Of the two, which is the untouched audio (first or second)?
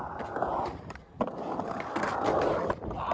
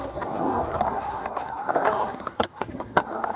first